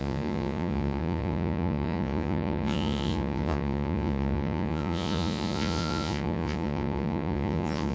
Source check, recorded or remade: remade